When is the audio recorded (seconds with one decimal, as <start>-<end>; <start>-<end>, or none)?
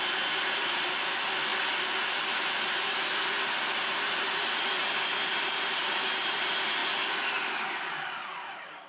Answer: 1.5-2.9; 6.8-7.9